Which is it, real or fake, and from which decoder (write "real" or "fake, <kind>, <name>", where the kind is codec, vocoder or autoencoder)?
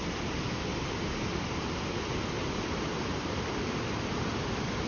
real